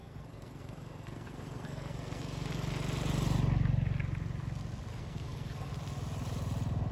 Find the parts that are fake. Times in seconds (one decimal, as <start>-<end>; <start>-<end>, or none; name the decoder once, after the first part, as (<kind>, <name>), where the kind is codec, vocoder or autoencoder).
0.0-2.5 (codec, SNAC); 4.9-5.7